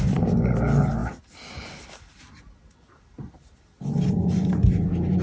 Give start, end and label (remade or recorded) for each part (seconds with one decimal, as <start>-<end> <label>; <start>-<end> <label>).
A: 0.0-5.2 recorded